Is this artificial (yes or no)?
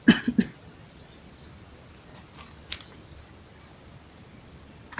no